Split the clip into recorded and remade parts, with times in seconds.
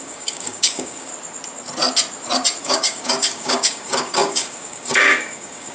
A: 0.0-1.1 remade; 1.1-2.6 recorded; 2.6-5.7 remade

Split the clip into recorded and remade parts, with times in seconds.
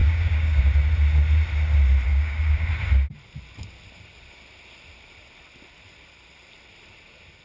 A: 0.0-0.6 remade; 0.6-2.1 recorded; 2.1-2.7 remade; 2.7-7.4 recorded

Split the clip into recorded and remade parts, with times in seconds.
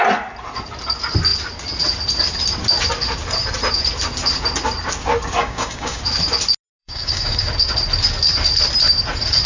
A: 0.0-5.4 recorded; 5.4-6.0 remade; 6.0-6.8 recorded; 6.8-7.5 remade; 7.5-9.5 recorded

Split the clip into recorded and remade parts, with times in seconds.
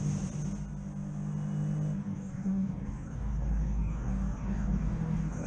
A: 0.0-2.0 recorded; 2.0-5.5 remade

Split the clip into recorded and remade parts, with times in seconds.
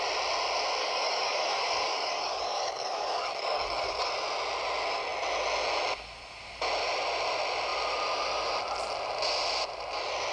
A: 0.0-0.8 recorded; 0.8-4.1 remade; 4.1-10.3 recorded